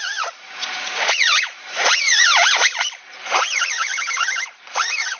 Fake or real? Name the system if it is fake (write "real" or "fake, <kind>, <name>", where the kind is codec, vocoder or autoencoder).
fake, vocoder, Vocos